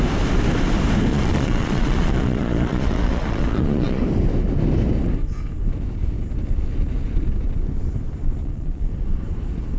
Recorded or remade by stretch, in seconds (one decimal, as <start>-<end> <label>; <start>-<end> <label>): 0.0-1.1 recorded; 1.1-4.0 remade; 4.0-8.4 recorded; 8.4-8.9 remade; 8.9-9.8 recorded